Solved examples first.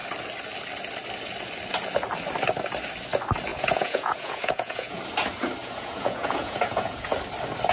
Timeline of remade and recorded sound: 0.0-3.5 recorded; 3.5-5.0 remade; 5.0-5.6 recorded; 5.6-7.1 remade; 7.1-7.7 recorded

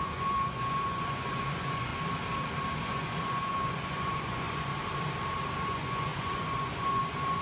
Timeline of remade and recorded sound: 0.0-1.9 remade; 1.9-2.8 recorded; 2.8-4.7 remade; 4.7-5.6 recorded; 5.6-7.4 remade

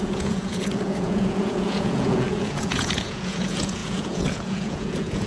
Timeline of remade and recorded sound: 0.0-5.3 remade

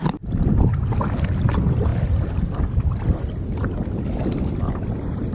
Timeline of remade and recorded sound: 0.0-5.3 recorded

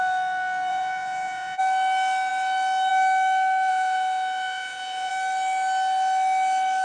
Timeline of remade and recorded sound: 0.0-0.7 recorded; 0.7-1.6 remade; 1.6-3.7 recorded; 3.7-5.1 remade; 5.1-6.8 recorded

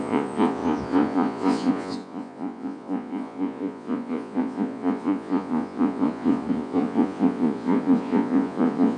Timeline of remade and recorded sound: 0.0-9.0 remade

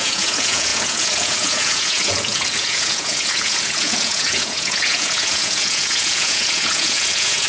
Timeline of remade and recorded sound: 0.0-7.5 remade

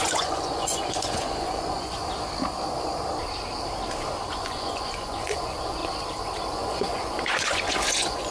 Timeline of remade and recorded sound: 0.0-2.0 remade; 2.0-4.3 recorded; 4.3-5.8 remade; 5.8-6.5 recorded; 6.5-8.3 remade